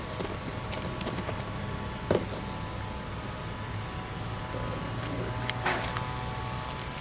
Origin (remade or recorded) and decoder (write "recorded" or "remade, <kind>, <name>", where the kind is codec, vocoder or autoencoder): recorded